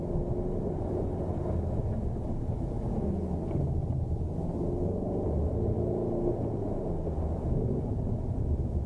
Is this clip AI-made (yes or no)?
no